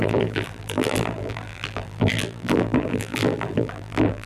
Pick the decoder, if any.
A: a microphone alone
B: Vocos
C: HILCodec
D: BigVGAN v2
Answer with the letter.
D